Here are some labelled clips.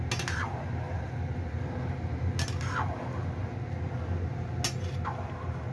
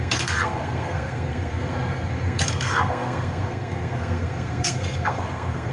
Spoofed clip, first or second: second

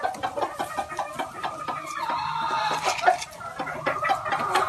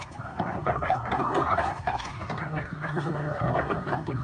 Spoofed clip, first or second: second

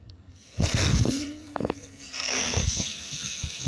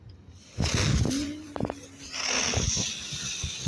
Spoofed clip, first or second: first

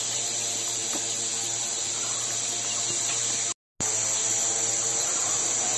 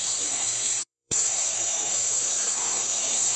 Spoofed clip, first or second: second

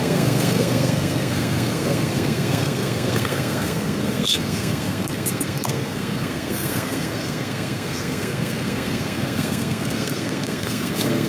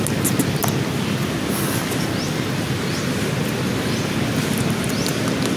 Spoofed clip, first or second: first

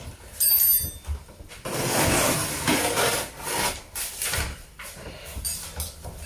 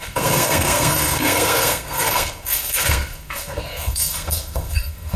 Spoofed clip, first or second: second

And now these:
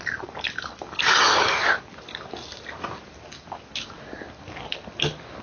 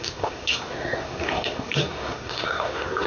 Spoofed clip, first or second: second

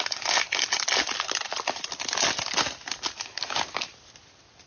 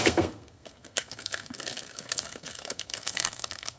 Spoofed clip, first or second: second